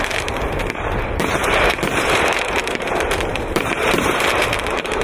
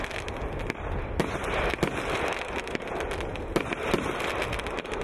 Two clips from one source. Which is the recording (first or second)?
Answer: second